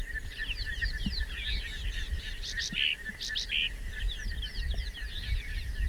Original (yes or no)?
no